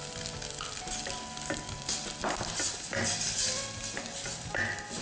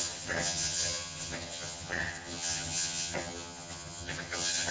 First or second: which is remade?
second